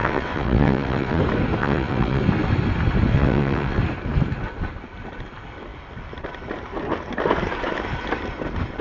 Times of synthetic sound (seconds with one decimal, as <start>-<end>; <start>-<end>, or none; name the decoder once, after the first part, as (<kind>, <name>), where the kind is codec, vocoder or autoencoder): 0.0-1.2 (vocoder, WaveNeXt); 1.6-2.2; 3.1-3.8